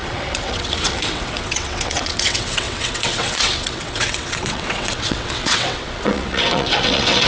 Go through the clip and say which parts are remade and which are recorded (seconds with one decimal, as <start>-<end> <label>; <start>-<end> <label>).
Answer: 0.0-7.3 remade